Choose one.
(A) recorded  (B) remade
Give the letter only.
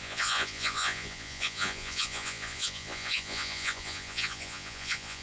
B